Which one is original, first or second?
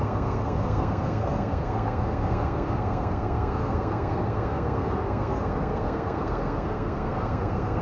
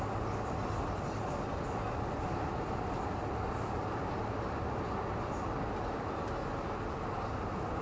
second